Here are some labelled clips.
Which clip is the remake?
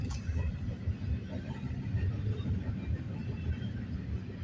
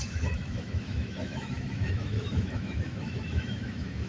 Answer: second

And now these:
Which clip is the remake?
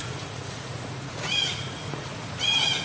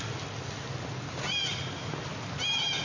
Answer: first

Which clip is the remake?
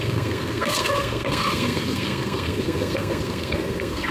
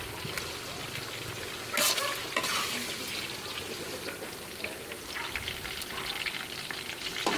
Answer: first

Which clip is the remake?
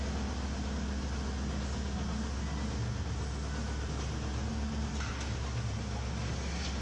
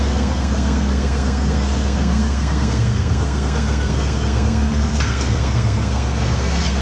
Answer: second